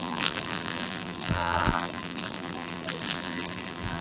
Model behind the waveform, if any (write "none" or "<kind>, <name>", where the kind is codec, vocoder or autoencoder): vocoder, BigVGAN v2